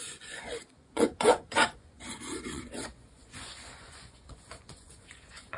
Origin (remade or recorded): remade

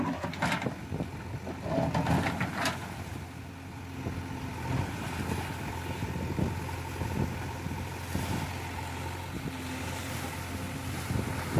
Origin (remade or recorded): recorded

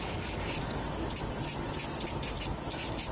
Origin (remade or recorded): recorded